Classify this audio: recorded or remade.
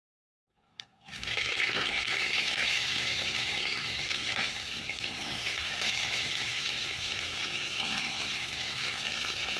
remade